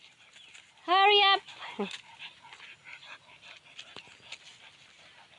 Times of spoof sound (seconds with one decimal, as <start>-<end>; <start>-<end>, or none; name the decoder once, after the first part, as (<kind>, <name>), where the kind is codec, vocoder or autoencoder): none